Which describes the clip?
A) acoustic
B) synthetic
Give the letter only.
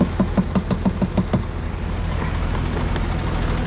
A